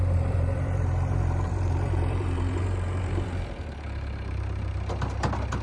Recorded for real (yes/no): no